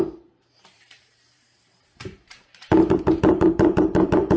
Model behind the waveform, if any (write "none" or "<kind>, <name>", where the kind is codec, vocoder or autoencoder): vocoder, BigVGAN v2